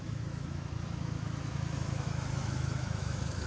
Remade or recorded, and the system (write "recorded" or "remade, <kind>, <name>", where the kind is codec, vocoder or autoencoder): remade, autoencoder, DAC-VAE